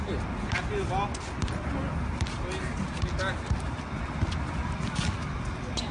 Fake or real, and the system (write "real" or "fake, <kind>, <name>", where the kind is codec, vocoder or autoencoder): real